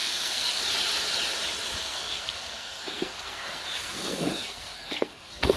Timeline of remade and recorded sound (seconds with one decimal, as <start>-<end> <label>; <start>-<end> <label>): 0.0-0.6 remade; 0.6-1.8 recorded; 1.8-5.6 remade